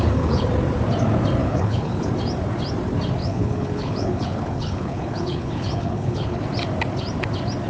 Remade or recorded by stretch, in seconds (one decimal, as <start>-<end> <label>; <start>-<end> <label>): 0.0-0.5 remade; 0.5-1.4 recorded; 1.4-2.1 remade; 2.1-3.2 recorded; 3.2-6.4 remade; 6.4-7.7 recorded